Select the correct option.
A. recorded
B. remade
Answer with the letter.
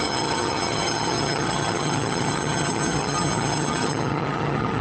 B